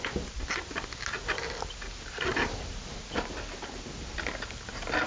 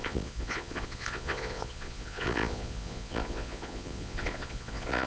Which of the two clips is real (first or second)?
first